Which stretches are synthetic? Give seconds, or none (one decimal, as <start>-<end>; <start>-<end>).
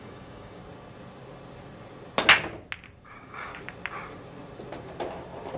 0.0-0.6; 3.0-3.5